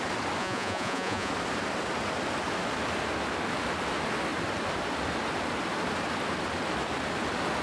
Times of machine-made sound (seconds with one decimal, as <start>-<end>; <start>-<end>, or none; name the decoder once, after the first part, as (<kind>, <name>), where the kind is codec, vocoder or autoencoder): 0.4-1.3 (vocoder, Vocos)

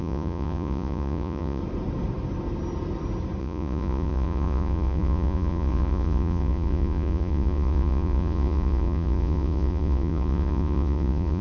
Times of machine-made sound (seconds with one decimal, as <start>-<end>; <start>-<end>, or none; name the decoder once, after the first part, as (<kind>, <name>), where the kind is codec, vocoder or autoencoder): 0.0-1.6 (vocoder, Vocos); 3.4-11.4